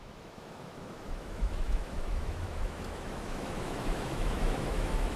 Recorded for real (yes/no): no